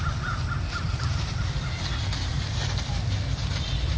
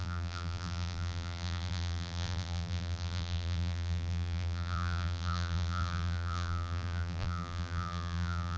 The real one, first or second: first